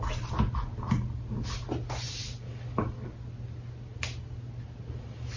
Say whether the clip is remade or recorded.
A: recorded